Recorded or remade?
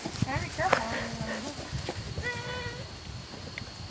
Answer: recorded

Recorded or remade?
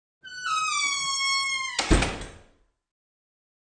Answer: recorded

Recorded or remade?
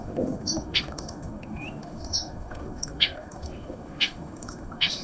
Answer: remade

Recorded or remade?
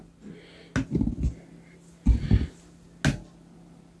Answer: recorded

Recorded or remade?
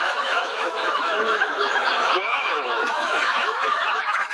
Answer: remade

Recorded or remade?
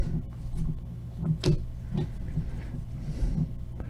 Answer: recorded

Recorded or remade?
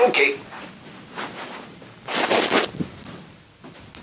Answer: recorded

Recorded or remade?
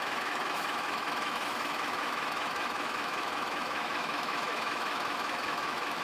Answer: remade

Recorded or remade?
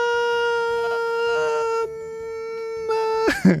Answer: recorded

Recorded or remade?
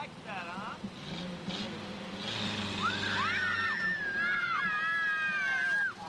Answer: recorded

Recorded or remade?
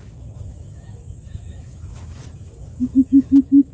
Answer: remade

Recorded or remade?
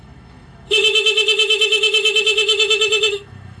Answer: remade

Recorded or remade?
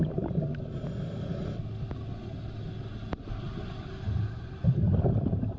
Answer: recorded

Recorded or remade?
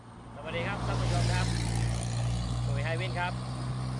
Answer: recorded